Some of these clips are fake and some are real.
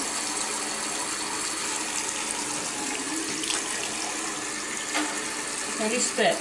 real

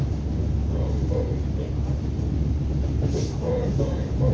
real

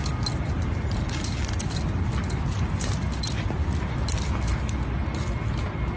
real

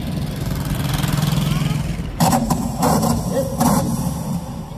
fake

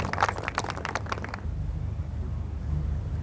real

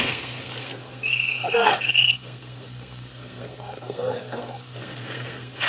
fake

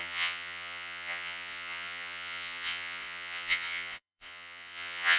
fake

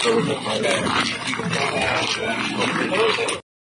real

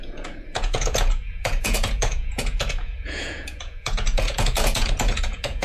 fake